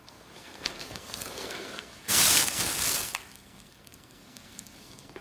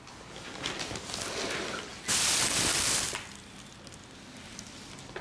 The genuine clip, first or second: second